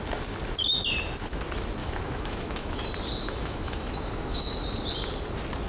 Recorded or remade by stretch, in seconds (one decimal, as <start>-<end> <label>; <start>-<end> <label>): 0.0-1.8 recorded; 1.8-2.8 remade; 2.8-3.2 recorded; 3.2-4.6 remade; 4.6-5.7 recorded